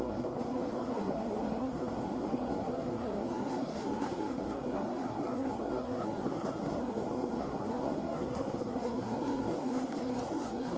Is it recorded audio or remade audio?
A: remade